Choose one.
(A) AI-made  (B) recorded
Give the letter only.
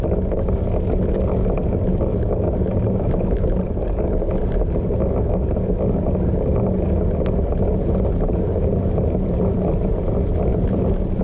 B